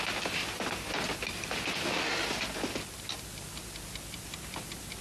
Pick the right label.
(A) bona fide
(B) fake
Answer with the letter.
A